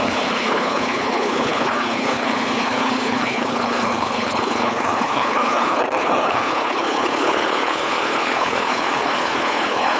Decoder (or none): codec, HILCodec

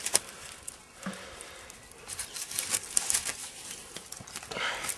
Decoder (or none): none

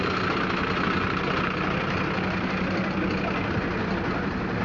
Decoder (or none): none